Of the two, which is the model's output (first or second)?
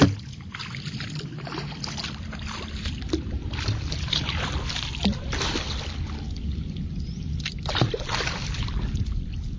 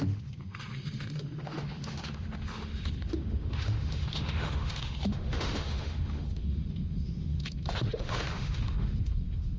second